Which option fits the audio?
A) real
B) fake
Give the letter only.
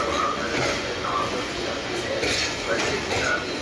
B